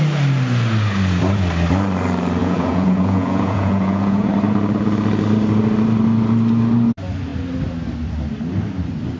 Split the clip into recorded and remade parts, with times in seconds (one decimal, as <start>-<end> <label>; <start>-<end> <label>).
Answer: 0.0-2.4 recorded; 2.4-4.3 remade; 4.3-9.2 recorded